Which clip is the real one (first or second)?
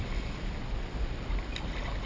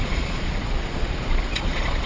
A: first